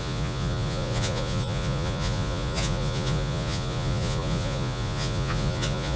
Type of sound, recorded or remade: remade